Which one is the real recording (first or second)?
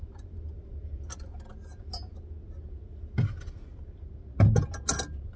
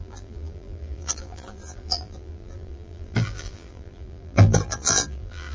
first